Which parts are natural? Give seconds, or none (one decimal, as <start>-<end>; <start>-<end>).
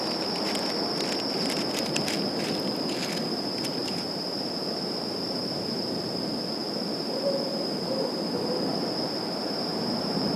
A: 0.0-3.8; 6.1-6.6; 8.7-9.7